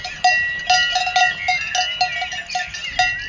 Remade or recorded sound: recorded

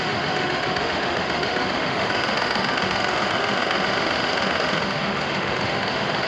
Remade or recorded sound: remade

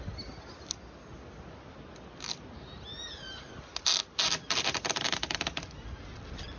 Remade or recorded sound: recorded